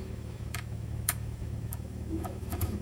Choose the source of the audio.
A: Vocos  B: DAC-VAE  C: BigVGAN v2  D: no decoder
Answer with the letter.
B